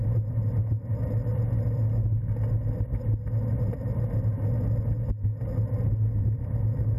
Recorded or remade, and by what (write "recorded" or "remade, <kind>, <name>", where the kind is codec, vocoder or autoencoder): recorded